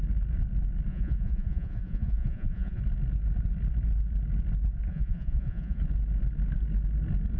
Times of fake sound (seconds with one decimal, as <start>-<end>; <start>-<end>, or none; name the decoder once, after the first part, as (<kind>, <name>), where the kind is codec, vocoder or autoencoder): 0.9-2.8 (vocoder, Vocos); 4.9-5.8